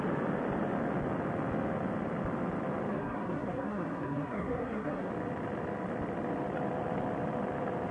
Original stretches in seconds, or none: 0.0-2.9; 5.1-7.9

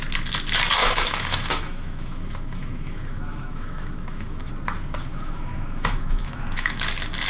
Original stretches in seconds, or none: 0.0-0.8; 4.5-5.1; 6.8-7.3